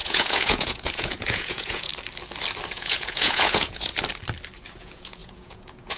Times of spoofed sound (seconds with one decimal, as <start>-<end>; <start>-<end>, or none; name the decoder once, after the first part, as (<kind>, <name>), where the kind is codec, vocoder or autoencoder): 0.0-1.9 (vocoder, Vocos); 2.7-3.9; 4.8-6.0